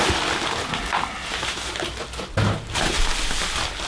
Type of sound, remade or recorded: recorded